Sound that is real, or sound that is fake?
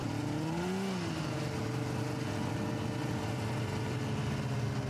real